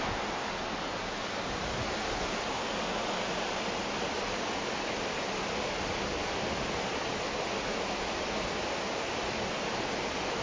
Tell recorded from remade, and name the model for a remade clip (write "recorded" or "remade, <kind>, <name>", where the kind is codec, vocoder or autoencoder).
recorded